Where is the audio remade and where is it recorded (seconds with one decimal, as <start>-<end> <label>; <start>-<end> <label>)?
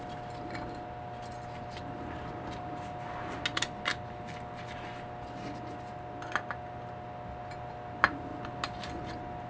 0.0-9.5 recorded